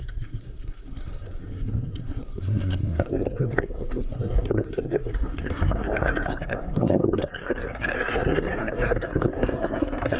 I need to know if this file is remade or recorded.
remade